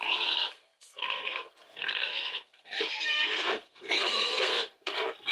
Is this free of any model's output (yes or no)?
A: no